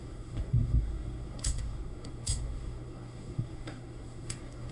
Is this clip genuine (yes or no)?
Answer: no